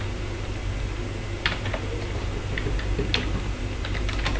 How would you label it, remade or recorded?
recorded